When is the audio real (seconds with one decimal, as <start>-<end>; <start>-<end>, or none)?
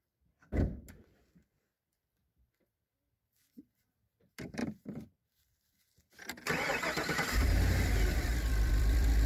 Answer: none